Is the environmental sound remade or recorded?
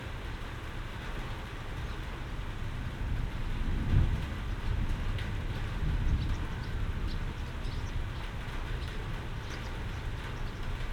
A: recorded